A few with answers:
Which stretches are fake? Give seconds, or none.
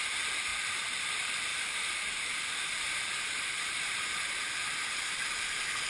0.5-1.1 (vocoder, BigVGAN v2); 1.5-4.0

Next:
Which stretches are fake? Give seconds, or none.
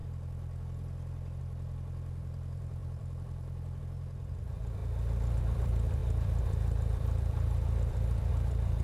1.4-4.8 (vocoder, BigVGAN v2); 5.4-8.8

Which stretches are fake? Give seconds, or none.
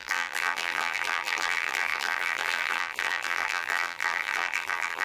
0.0-5.0 (vocoder, BigVGAN v2)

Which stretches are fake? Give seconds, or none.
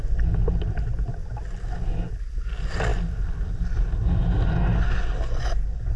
none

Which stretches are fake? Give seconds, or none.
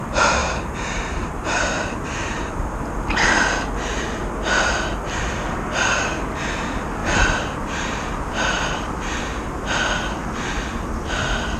0.4-2.9 (vocoder, BigVGAN v2); 7.0-9.2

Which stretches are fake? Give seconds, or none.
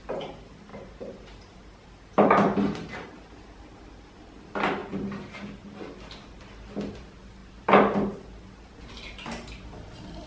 0.7-3.9 (vocoder, BigVGAN v2); 4.8-5.3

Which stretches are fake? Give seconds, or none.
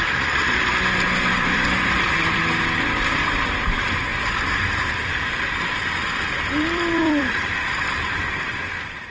0.0-4.1 (vocoder, BigVGAN v2); 5.6-9.1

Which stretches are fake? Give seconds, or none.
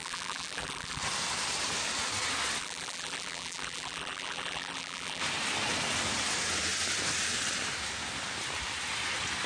0.0-1.0 (vocoder, BigVGAN v2); 2.6-5.2